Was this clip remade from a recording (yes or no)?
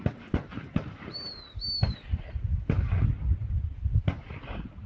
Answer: no